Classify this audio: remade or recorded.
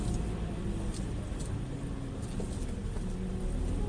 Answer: recorded